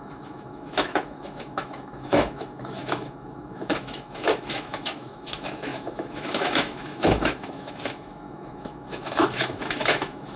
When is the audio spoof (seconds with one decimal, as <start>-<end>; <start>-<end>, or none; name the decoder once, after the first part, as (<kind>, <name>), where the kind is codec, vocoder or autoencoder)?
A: 0.0-10.4 (autoencoder, DAC-VAE)